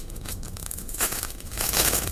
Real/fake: fake